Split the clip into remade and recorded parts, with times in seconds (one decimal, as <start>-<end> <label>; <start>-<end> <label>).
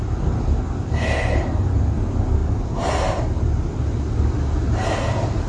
0.0-2.4 recorded; 2.4-3.0 remade; 3.0-5.5 recorded